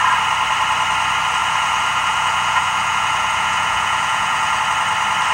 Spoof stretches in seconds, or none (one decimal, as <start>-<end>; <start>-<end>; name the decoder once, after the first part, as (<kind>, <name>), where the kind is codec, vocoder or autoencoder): 1.4-4.6 (vocoder, Vocos)